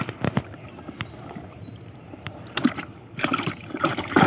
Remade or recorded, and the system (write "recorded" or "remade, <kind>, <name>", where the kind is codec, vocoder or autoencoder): remade, vocoder, BigVGAN v2